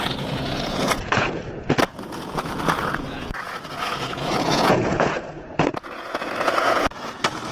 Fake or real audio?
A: fake